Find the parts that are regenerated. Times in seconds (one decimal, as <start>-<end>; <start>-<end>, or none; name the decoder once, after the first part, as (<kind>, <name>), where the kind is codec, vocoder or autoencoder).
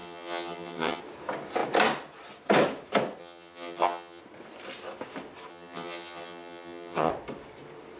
0.0-1.0 (vocoder, HiFi-GAN); 3.2-4.2; 5.5-7.1